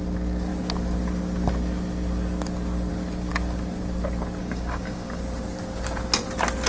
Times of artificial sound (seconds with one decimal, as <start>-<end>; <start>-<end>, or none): 4.4-5.2